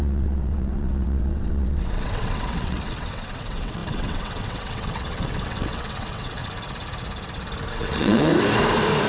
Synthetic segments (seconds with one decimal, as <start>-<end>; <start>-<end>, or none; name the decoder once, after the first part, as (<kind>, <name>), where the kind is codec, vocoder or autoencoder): 0.0-6.4 (vocoder, WaveNeXt); 7.7-8.3